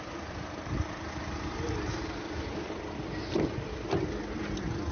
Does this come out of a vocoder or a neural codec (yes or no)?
no